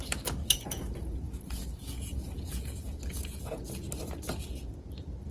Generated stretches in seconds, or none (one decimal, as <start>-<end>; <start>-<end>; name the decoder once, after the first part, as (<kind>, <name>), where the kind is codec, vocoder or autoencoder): 0.4-3.6 (vocoder, Vocos)

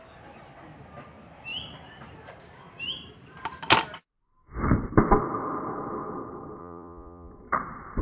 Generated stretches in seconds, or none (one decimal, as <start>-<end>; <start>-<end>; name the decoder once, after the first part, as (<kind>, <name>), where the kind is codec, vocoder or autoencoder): 6.6-7.3 (vocoder, Vocos)